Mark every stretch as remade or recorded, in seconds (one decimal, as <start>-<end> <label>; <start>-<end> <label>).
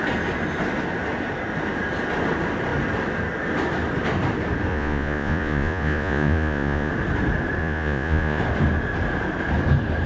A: 0.0-4.7 recorded; 4.7-6.9 remade; 6.9-7.6 recorded; 7.6-8.4 remade; 8.4-10.1 recorded